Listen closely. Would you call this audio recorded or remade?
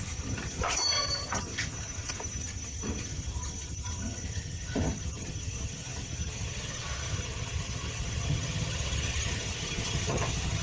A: remade